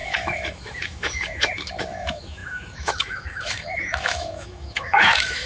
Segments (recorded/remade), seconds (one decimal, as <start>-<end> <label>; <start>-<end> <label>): 0.0-5.5 remade